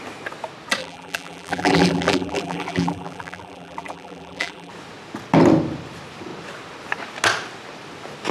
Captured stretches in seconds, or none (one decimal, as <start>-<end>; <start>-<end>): 0.0-0.8; 4.7-8.3